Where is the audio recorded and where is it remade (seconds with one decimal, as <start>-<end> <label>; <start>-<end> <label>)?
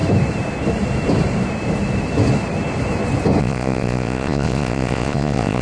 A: 0.0-3.4 recorded; 3.4-5.6 remade